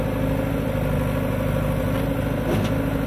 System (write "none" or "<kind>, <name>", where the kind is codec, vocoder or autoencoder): none